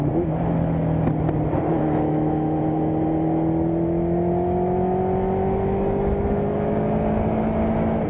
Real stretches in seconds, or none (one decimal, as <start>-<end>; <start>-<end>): 0.0-1.7; 2.6-8.1